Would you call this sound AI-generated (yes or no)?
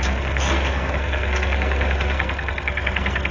yes